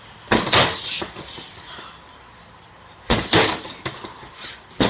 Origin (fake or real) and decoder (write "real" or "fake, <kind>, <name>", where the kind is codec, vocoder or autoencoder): real